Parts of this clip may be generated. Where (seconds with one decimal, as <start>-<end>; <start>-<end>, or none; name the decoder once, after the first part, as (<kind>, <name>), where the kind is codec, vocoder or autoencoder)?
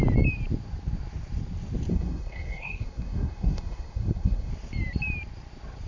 1.9-4.5 (codec, SNAC)